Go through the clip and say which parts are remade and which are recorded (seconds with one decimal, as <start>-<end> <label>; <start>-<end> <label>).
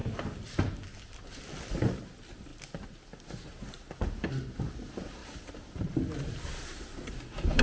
0.0-7.6 recorded